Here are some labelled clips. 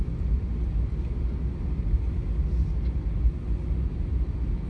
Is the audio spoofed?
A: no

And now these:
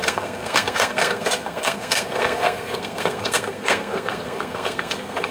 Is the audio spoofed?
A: yes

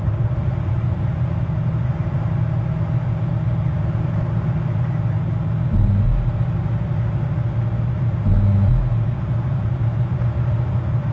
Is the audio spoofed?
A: no